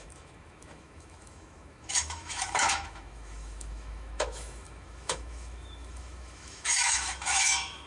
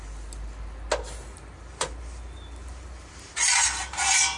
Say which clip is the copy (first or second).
first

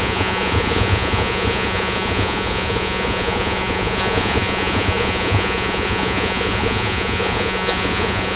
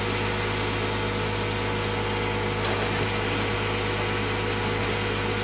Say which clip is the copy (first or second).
first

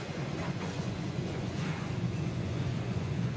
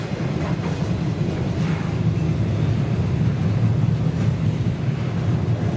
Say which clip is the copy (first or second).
first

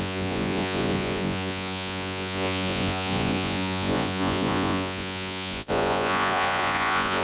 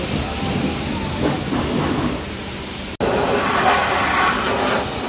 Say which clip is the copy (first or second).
first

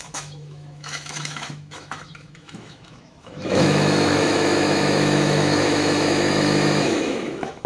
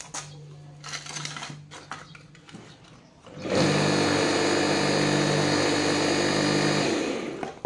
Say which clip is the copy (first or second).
first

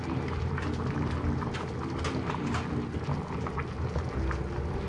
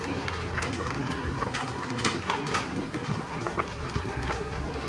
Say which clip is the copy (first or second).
second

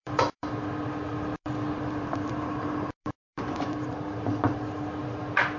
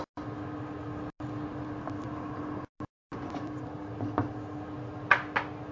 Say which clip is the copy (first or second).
first